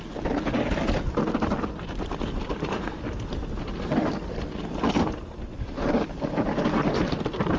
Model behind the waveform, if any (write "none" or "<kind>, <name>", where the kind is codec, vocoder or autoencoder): none